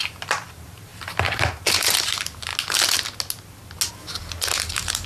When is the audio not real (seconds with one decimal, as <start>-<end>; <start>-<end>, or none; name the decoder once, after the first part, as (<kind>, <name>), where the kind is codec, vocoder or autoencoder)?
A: 0.0-2.5 (vocoder, BigVGAN v2); 3.9-5.1